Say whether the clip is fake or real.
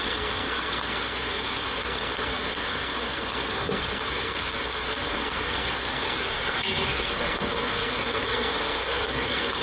fake